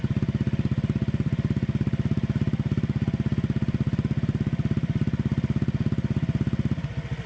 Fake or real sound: real